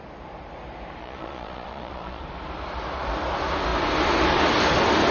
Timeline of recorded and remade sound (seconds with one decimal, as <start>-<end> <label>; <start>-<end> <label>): 0.0-1.0 recorded; 1.0-2.2 remade; 2.2-5.1 recorded